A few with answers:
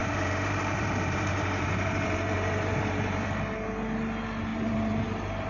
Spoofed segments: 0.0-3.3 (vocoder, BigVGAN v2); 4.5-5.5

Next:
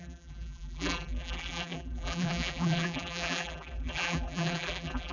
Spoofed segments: 0.0-5.1 (vocoder, BigVGAN v2)